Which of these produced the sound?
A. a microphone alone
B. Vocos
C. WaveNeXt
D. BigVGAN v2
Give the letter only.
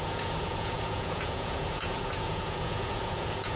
B